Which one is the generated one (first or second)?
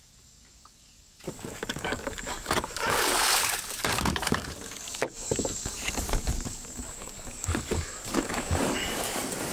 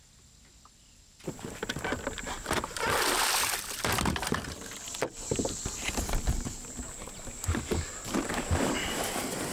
first